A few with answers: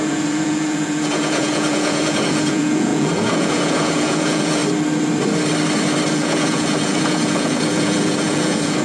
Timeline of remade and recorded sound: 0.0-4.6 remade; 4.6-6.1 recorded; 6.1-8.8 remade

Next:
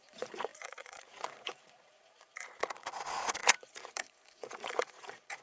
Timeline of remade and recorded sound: 0.0-5.4 remade

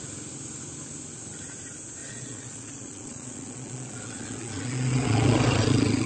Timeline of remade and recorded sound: 0.0-2.0 recorded; 2.0-6.1 remade

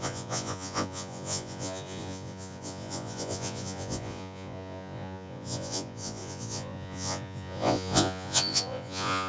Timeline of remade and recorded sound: 0.0-9.3 remade

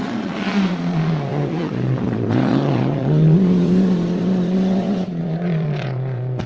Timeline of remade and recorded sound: 0.0-6.5 remade

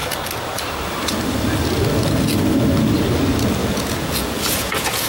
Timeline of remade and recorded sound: 0.0-3.6 recorded; 3.6-5.1 remade

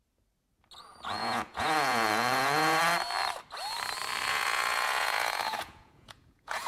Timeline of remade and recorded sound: 0.0-1.2 recorded; 1.2-2.8 remade; 2.8-4.3 recorded; 4.3-6.7 remade

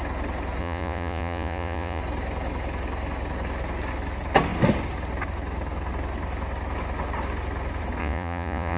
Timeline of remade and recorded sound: 0.0-0.6 recorded; 0.6-2.0 remade; 2.0-8.0 recorded; 8.0-8.8 remade